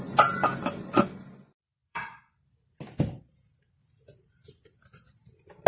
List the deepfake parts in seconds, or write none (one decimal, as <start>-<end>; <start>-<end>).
1.8-2.3